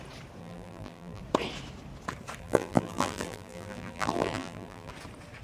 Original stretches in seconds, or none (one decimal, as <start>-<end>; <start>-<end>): 0.0-0.4; 1.2-2.4; 4.9-5.4